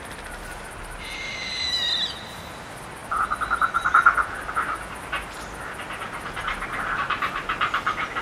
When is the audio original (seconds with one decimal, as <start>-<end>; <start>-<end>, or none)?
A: 0.0-8.2